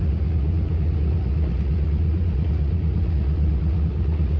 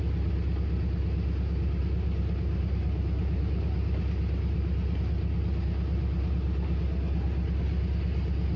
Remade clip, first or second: first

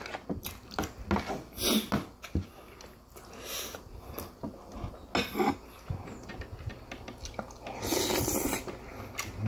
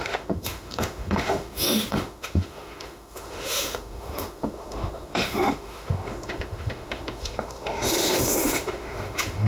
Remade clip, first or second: second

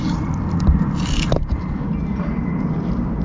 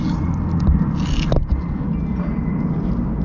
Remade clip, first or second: first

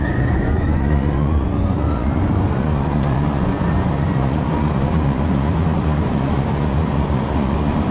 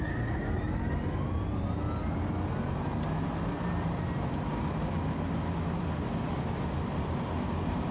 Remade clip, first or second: first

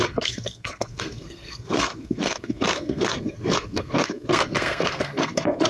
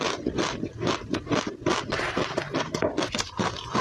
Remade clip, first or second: first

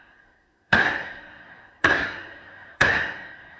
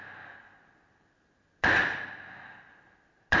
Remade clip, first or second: first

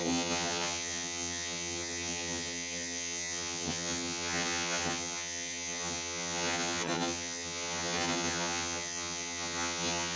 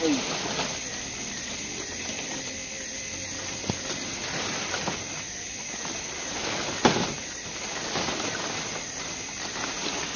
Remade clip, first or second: first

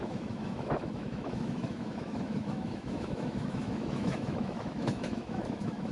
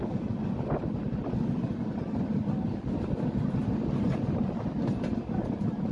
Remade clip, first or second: first